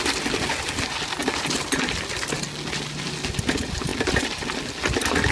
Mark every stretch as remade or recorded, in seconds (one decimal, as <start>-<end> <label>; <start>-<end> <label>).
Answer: 0.0-5.3 recorded